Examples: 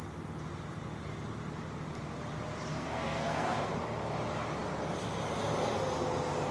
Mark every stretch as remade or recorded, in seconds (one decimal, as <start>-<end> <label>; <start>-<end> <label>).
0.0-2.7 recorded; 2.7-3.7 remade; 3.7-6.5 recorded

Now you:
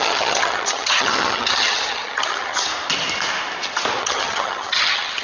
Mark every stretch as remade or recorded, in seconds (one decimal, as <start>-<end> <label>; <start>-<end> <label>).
0.0-2.7 remade; 2.7-4.0 recorded; 4.0-5.2 remade

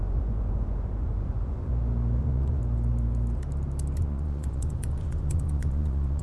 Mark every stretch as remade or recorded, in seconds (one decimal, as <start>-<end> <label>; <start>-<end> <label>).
0.0-1.7 remade; 1.7-2.2 recorded; 2.2-2.6 remade; 2.6-4.0 recorded; 4.0-6.2 remade

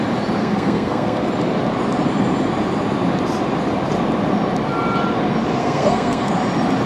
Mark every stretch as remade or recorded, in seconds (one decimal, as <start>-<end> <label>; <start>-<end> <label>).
0.0-0.4 recorded; 0.4-1.3 remade; 1.3-5.6 recorded; 5.6-6.3 remade; 6.3-6.9 recorded

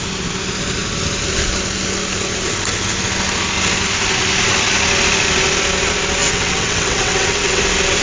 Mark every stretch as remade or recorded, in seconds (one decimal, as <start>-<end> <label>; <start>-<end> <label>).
0.0-6.2 recorded; 6.2-7.6 remade; 7.6-8.0 recorded

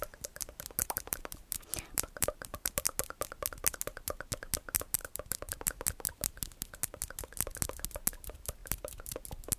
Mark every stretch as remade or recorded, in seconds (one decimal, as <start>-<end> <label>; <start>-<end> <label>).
0.0-0.8 recorded; 0.8-2.7 remade; 2.7-5.0 recorded; 5.0-5.6 remade; 5.6-9.6 recorded